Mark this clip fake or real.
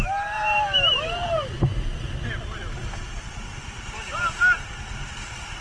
real